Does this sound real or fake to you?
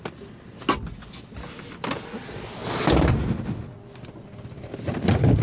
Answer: real